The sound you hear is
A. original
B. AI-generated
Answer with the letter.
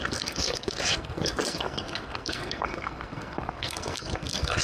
B